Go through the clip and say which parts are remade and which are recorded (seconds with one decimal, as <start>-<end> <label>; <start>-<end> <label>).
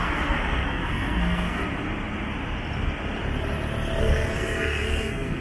0.0-1.6 remade; 1.6-4.0 recorded; 4.0-5.4 remade